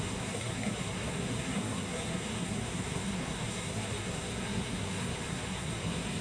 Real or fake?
fake